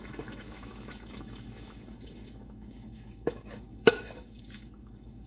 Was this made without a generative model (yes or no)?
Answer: no